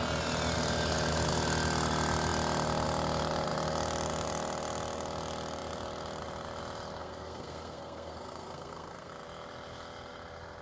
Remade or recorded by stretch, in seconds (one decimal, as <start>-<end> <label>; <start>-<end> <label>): 0.0-7.0 recorded; 7.0-9.1 remade; 9.1-10.6 recorded